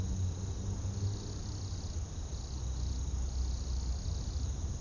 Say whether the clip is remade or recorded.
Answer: recorded